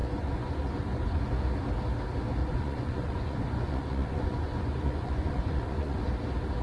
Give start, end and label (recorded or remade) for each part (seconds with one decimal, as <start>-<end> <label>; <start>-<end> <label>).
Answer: 0.0-1.2 remade; 1.2-2.4 recorded; 2.4-6.0 remade; 6.0-6.6 recorded